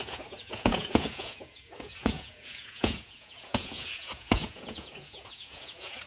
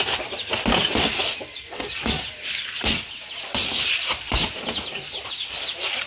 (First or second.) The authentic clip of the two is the second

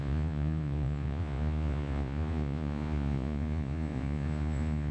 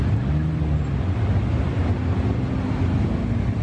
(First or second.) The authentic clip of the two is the second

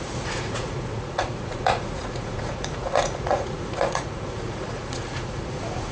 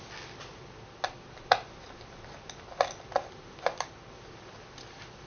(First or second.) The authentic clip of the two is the second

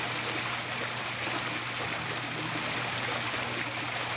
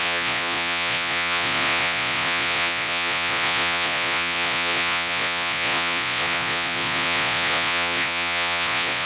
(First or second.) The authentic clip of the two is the first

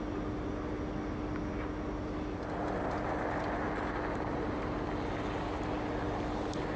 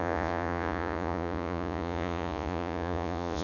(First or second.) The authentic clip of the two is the first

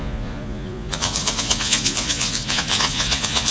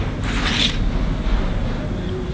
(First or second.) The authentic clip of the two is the second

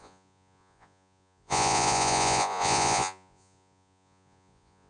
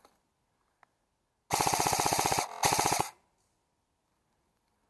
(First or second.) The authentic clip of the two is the second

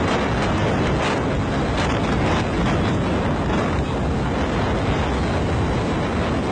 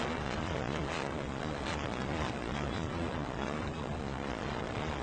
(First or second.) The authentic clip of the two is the first